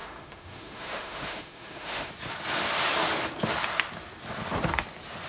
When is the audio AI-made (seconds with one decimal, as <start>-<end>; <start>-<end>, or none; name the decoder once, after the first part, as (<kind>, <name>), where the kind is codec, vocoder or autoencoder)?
0.0-2.1 (autoencoder, DAC-VAE)